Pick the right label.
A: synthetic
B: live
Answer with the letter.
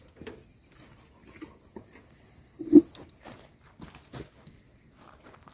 B